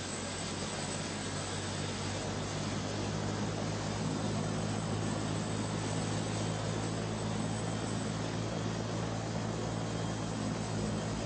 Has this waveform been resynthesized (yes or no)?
no